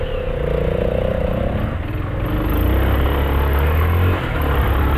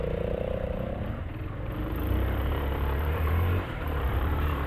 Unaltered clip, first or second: first